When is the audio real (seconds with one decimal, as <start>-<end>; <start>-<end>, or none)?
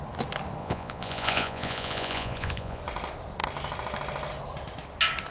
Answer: 0.0-0.6; 2.8-5.3